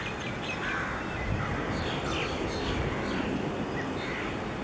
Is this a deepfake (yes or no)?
no